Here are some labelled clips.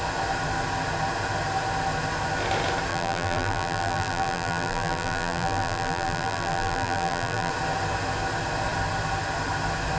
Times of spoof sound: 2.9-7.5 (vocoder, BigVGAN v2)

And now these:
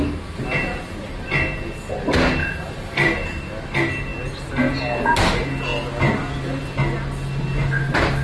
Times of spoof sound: 2.4-3.4 (vocoder, BigVGAN v2)

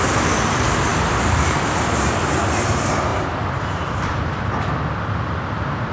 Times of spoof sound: 0.9-2.4 (vocoder, BigVGAN v2)

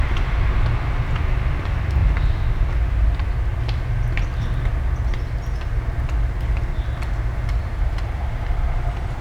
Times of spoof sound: none

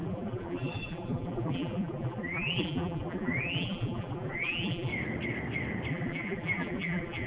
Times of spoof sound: 0.0-4.9 (vocoder, BigVGAN v2); 5.9-7.3